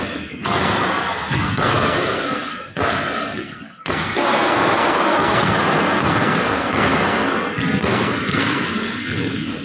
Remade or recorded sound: remade